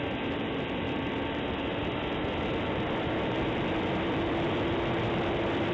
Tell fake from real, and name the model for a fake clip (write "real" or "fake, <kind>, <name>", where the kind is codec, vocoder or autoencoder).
real